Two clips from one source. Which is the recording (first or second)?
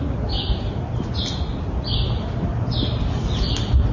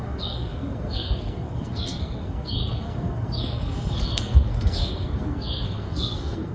first